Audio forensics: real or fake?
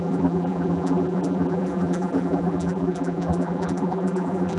fake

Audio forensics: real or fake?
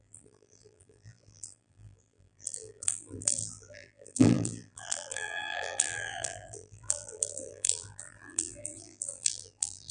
fake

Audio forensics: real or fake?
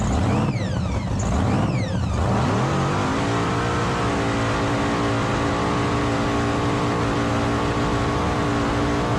real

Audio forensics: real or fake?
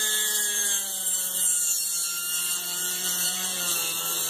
fake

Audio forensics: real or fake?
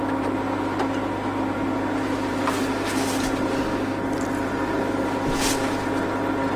real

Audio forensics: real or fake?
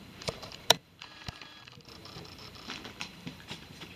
fake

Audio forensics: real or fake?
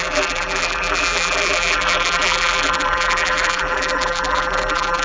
fake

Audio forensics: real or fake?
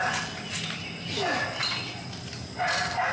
real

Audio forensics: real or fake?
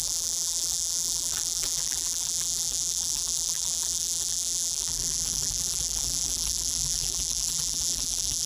fake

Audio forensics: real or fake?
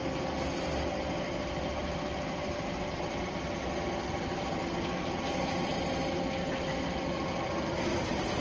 real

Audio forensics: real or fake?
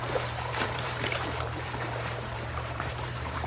fake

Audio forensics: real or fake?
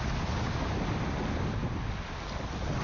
real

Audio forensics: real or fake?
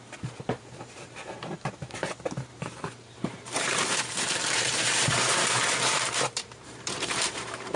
fake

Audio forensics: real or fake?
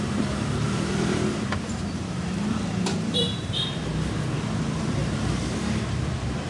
fake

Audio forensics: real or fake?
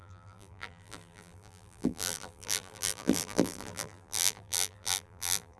fake